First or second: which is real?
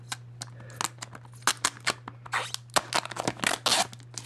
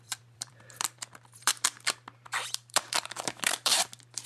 first